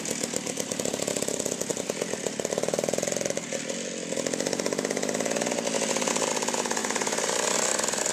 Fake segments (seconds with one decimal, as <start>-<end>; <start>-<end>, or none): 6.8-8.1